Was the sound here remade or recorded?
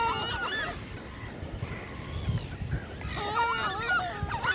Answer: recorded